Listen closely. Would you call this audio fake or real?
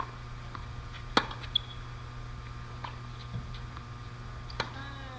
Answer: real